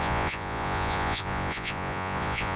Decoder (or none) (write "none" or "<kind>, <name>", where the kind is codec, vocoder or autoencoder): vocoder, Vocos